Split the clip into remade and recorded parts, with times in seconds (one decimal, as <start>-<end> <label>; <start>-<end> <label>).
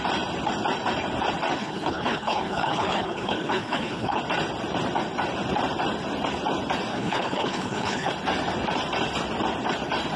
0.0-1.6 recorded; 1.6-4.2 remade; 4.2-6.9 recorded; 6.9-8.1 remade; 8.1-10.2 recorded